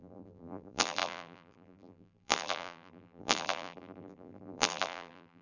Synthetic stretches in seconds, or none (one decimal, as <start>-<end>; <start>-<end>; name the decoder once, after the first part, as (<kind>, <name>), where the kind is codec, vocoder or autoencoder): 0.0-5.4 (vocoder, BigVGAN v2)